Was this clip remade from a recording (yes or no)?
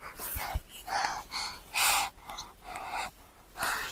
no